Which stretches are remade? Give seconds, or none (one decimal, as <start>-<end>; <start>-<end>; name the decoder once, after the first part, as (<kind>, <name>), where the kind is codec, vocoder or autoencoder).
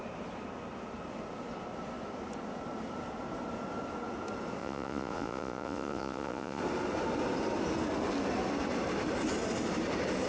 4.6-6.6 (vocoder, Vocos)